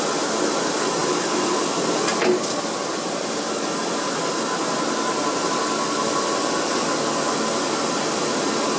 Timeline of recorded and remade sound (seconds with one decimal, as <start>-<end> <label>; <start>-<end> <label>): 0.0-8.8 recorded